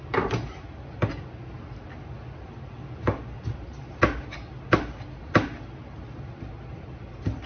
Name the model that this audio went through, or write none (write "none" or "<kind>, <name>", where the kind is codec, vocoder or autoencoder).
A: none